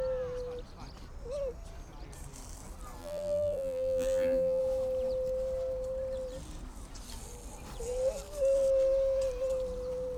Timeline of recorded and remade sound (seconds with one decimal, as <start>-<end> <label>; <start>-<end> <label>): 0.0-3.0 recorded; 3.0-4.6 remade; 4.6-10.2 recorded